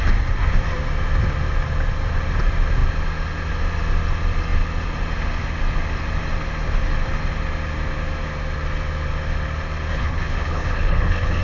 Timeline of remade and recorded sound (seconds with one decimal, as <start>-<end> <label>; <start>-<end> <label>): 0.0-9.9 recorded; 9.9-11.4 remade